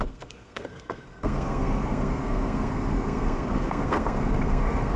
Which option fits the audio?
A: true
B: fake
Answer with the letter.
B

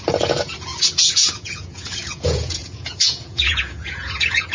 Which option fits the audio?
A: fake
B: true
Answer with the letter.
A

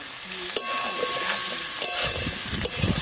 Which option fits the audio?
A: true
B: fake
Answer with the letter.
A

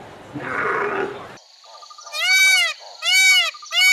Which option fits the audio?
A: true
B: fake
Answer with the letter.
B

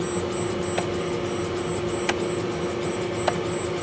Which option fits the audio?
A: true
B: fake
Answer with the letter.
A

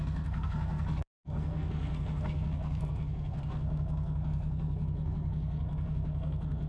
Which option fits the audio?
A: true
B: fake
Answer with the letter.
B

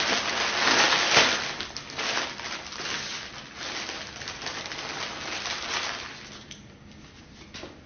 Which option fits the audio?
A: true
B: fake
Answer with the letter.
A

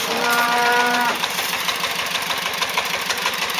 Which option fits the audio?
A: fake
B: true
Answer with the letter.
A